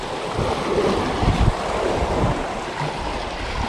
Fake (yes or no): no